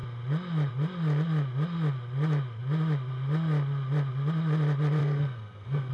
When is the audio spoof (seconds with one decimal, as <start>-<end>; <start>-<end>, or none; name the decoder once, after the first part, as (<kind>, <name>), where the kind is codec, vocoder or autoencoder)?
5.0-5.9 (codec, SNAC)